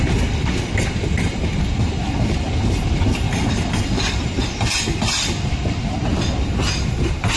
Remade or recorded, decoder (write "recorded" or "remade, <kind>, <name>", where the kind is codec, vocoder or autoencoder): recorded